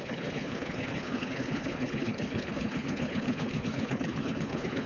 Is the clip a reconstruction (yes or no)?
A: yes